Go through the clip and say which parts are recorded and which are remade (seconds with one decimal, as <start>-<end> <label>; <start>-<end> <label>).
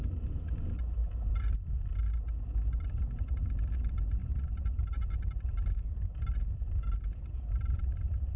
0.0-1.0 recorded; 1.0-3.2 remade; 3.2-4.2 recorded; 4.2-8.4 remade